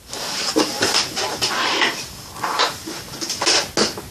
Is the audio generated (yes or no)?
no